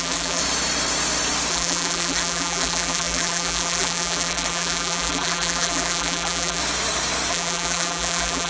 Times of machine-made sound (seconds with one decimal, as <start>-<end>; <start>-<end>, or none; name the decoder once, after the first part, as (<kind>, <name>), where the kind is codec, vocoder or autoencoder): 0.0-0.4 (vocoder, BigVGAN v2); 1.5-6.6; 7.3-8.5